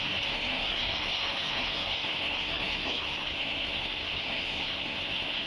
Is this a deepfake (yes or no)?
yes